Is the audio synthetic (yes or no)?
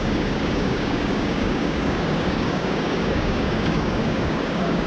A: yes